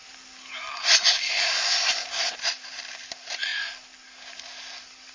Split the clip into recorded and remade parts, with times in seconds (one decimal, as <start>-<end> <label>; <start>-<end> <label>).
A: 0.0-3.5 remade; 3.5-4.2 recorded; 4.2-5.1 remade